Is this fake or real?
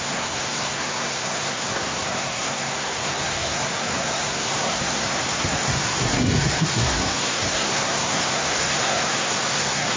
fake